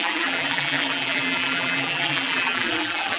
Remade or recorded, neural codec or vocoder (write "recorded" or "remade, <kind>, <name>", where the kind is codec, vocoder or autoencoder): remade, vocoder, BigVGAN v2